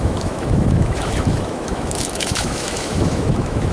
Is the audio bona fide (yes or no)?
no